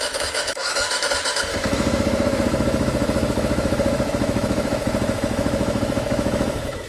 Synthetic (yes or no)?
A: yes